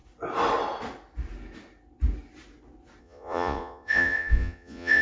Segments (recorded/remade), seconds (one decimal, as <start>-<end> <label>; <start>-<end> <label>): 0.0-3.0 recorded; 3.0-5.0 remade